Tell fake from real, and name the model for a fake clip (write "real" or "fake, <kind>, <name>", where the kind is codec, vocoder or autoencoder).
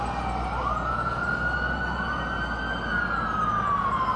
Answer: real